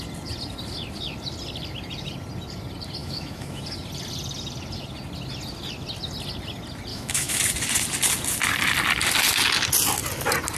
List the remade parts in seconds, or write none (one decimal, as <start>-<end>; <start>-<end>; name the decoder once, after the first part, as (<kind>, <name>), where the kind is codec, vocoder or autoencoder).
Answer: 3.0-3.6 (autoencoder, DAC-VAE); 6.9-7.4